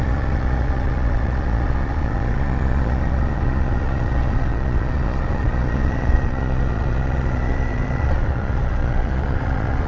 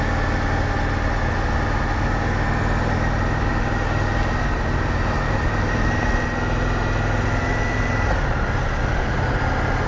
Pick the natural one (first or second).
second